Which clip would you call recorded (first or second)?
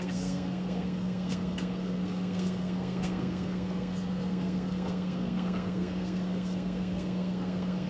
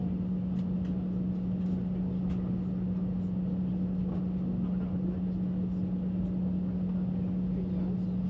second